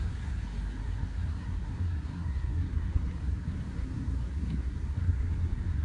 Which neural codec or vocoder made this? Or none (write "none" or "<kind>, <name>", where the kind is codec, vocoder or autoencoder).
codec, SNAC